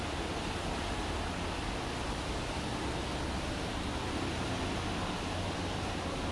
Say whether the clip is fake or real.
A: real